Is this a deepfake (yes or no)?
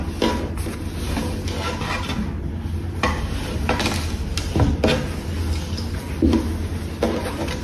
no